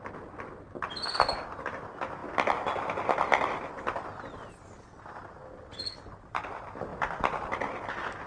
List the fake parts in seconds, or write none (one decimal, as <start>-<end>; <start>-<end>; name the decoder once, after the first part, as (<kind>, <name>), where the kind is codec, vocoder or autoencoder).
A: none